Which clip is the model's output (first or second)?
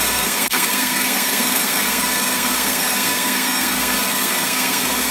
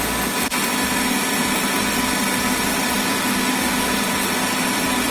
first